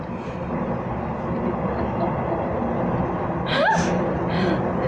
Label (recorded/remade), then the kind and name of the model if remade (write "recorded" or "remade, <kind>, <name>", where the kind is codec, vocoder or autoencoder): recorded